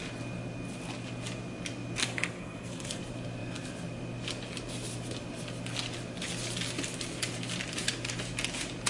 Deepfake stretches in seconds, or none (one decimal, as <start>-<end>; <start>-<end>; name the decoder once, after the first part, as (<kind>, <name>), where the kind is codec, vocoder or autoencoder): 2.0-3.0 (codec, SNAC)